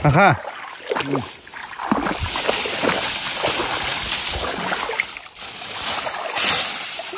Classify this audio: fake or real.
real